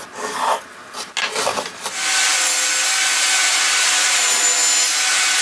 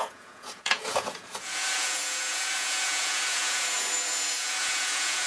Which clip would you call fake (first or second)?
second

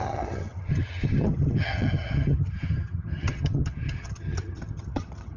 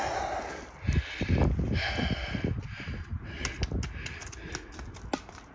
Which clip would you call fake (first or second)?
first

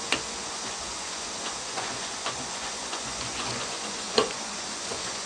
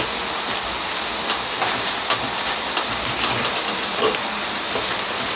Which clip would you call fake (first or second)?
first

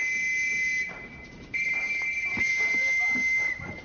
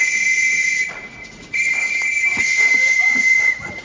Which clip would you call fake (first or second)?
second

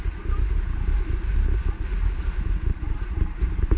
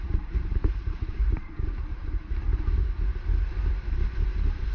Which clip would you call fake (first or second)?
second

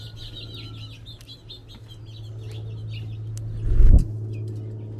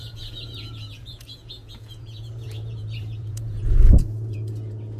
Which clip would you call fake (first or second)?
second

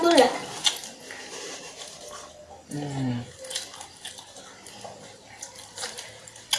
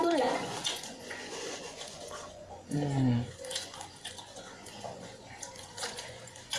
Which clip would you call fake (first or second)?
second